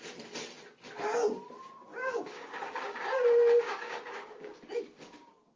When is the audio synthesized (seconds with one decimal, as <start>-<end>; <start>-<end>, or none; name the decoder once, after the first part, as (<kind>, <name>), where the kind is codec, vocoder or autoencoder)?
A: 1.9-5.6 (codec, DAC)